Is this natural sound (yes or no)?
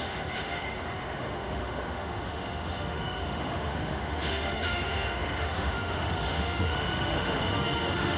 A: no